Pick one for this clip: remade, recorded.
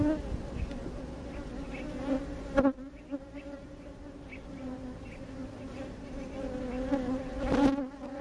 recorded